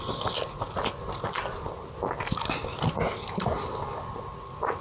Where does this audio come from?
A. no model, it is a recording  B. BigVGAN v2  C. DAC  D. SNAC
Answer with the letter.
A